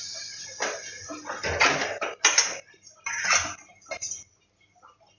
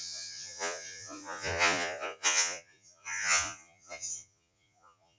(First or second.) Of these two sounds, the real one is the first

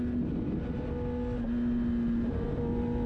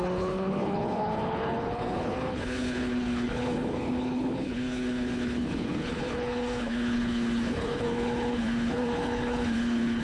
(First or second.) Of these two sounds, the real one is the first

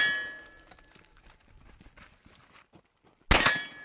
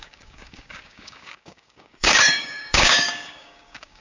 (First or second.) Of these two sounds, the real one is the first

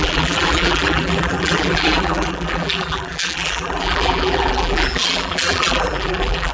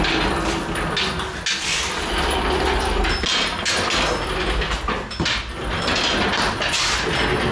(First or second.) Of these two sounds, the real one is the second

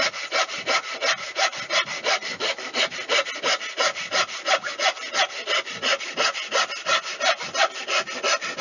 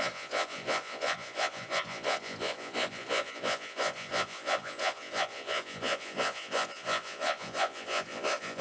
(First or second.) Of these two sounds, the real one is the first